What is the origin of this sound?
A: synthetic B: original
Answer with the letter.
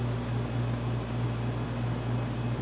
B